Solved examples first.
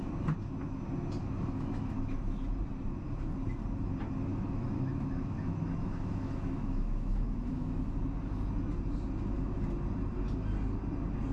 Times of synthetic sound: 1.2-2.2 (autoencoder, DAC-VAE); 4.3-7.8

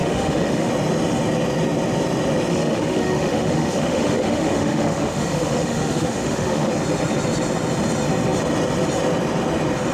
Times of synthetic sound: 0.0-0.7 (autoencoder, DAC-VAE); 2.5-6.7

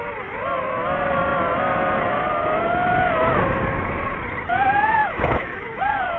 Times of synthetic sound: 5.0-5.8 (autoencoder, DAC-VAE)

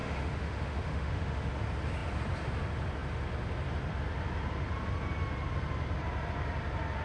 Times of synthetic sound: 0.0-1.5 (autoencoder, DAC-VAE)

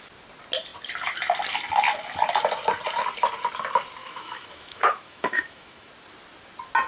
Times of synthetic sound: 4.0-5.9 (autoencoder, DAC-VAE)